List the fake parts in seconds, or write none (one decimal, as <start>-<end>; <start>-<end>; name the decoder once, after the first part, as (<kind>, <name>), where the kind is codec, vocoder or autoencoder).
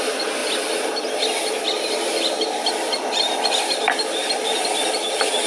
none